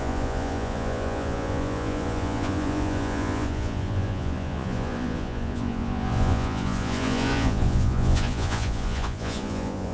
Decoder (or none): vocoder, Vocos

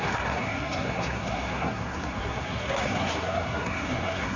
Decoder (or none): codec, SNAC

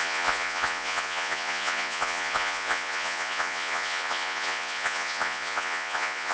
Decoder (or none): vocoder, Vocos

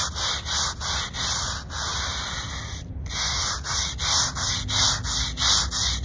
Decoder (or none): none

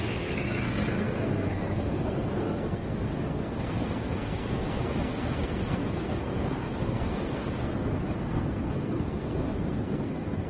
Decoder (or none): codec, SNAC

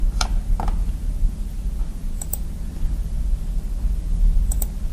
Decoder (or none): none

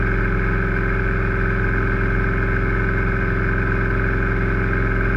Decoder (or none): none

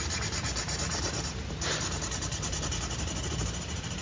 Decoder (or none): none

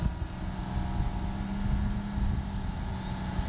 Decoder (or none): none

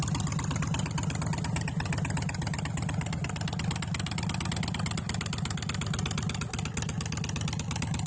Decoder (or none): none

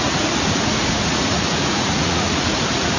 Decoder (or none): vocoder, Vocos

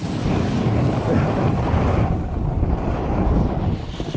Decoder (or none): none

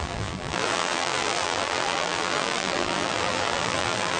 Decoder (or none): vocoder, BigVGAN v2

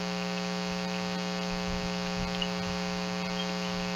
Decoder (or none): none